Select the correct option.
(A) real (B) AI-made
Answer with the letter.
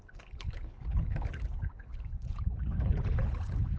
B